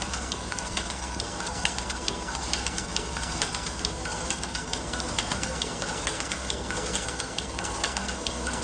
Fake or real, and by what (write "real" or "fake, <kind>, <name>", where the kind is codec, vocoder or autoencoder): fake, codec, SNAC